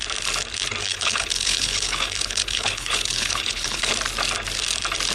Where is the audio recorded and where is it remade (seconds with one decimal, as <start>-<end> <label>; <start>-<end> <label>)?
0.0-0.8 recorded; 0.8-3.9 remade; 3.9-5.1 recorded